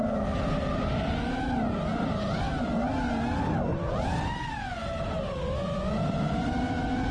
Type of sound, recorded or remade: recorded